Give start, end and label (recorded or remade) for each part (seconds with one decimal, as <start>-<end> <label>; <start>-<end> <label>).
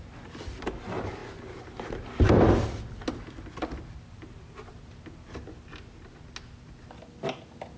0.0-7.8 recorded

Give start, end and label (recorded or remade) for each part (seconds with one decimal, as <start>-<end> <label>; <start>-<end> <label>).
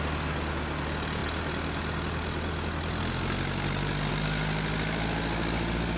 0.0-6.0 recorded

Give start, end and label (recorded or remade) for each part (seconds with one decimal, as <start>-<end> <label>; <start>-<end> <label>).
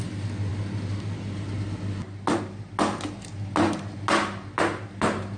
0.0-5.4 recorded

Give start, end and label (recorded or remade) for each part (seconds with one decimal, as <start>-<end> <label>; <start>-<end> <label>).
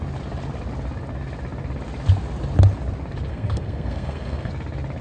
0.0-3.3 recorded; 3.3-4.5 remade; 4.5-5.0 recorded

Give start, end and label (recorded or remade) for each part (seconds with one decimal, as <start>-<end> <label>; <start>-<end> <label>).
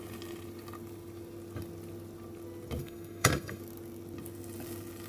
0.0-2.8 recorded; 2.8-3.6 remade; 3.6-5.1 recorded